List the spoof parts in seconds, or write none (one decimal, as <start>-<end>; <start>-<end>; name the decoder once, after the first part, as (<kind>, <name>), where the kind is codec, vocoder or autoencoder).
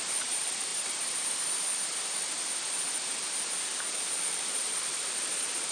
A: 0.0-0.7 (vocoder, BigVGAN v2); 4.1-5.7